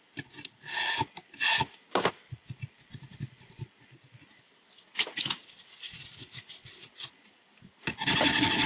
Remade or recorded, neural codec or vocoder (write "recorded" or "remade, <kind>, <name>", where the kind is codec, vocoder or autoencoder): recorded